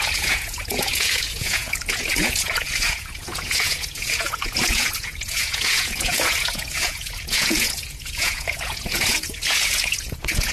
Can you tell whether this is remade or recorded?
remade